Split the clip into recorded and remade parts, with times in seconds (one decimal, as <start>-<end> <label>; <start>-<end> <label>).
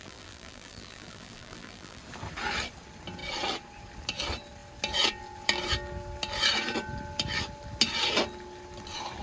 0.0-2.0 remade; 2.0-9.2 recorded